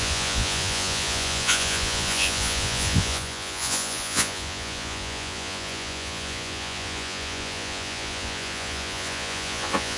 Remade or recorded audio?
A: remade